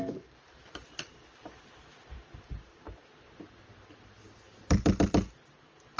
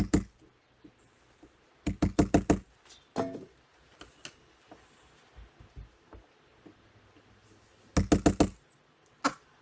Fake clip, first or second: first